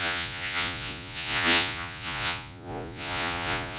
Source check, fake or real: fake